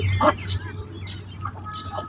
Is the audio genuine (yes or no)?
yes